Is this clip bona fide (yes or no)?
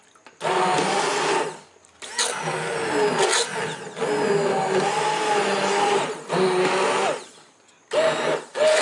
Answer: yes